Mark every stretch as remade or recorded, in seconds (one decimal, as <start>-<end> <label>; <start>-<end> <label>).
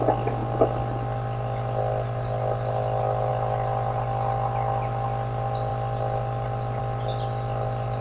0.0-8.0 recorded